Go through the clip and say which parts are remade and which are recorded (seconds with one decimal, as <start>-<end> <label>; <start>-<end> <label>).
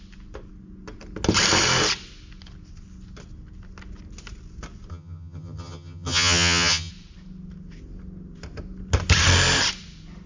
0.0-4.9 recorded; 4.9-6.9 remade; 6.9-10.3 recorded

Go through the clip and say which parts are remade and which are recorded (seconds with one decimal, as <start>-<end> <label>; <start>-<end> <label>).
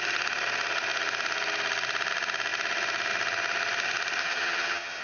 0.0-4.2 recorded; 4.2-5.0 remade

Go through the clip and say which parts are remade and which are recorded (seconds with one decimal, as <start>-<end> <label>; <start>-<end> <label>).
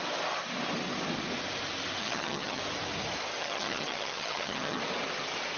0.0-2.0 recorded; 2.0-2.6 remade; 2.6-3.4 recorded; 3.4-4.8 remade; 4.8-5.6 recorded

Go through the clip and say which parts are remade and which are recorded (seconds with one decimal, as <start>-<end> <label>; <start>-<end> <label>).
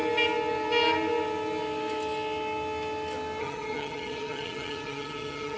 0.0-3.4 recorded; 3.4-5.6 remade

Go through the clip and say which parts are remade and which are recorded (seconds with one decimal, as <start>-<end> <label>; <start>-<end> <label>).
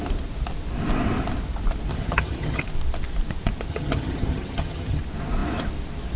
0.0-1.9 recorded; 1.9-2.6 remade; 2.6-3.7 recorded; 3.7-5.0 remade; 5.0-6.2 recorded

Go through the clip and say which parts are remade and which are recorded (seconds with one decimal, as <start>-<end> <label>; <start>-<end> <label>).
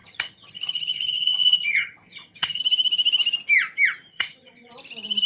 0.0-2.6 remade; 2.6-4.1 recorded; 4.1-4.7 remade; 4.7-5.3 recorded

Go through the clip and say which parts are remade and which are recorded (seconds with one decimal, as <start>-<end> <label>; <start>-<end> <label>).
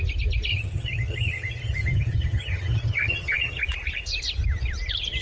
0.0-0.5 recorded; 0.5-3.6 remade; 3.6-5.2 recorded